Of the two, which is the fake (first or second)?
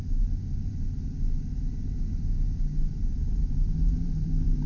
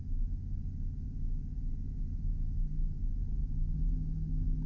first